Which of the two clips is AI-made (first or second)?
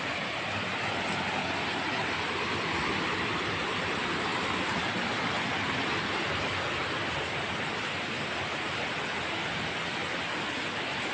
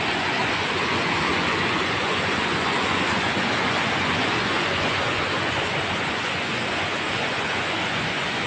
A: second